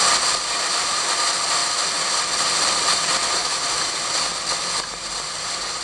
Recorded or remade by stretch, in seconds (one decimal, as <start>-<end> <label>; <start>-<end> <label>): 0.0-3.4 recorded; 3.4-3.9 remade; 3.9-5.8 recorded

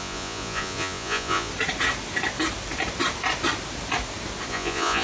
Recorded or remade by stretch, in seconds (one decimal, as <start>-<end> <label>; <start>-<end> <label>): 0.0-1.5 remade; 1.5-4.5 recorded; 4.5-5.0 remade